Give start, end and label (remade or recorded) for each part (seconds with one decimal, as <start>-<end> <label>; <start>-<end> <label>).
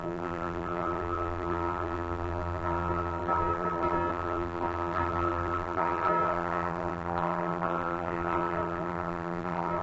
0.0-9.8 remade